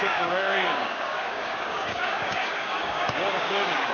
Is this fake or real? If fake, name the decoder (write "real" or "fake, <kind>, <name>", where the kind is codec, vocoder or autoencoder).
fake, codec, DAC